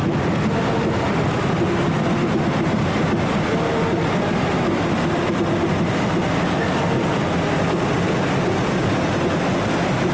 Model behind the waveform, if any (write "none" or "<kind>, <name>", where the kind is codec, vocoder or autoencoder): none